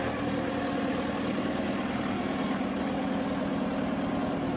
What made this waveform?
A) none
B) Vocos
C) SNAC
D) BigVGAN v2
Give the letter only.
A